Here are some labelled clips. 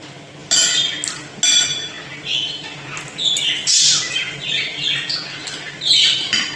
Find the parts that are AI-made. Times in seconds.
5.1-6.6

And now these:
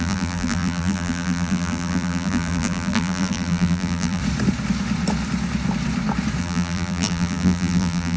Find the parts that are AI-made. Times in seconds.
0.0-4.2; 6.4-8.2

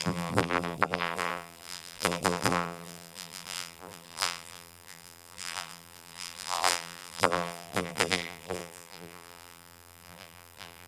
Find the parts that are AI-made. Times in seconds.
0.0-10.9

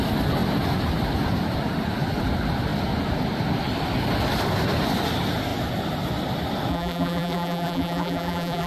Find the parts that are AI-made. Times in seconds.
6.7-8.7